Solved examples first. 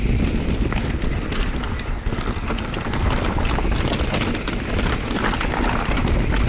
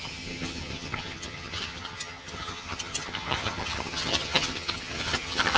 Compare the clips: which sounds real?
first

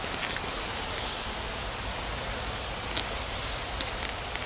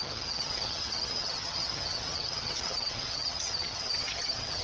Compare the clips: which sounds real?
first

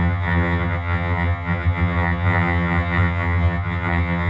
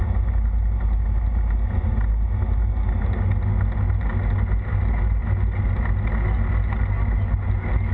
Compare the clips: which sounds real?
second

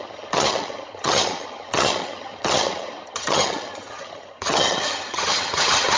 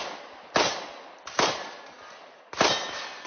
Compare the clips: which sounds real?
second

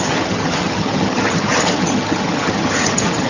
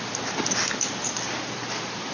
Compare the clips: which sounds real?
second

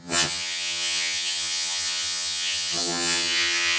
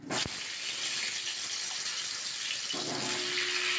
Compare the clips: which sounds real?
second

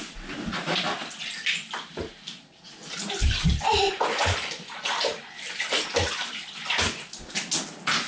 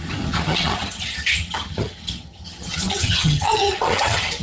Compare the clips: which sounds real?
first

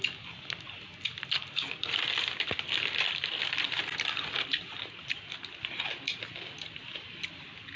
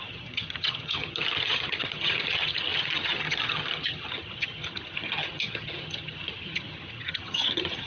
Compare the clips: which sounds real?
first